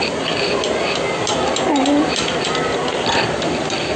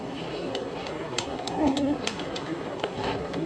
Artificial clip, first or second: second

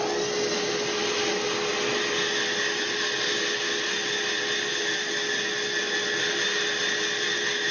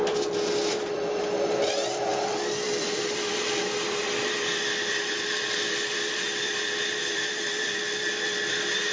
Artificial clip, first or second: second